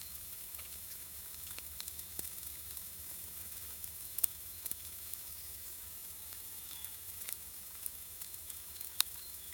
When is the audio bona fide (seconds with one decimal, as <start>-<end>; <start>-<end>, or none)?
none